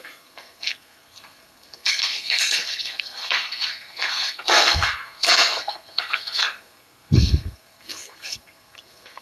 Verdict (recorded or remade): remade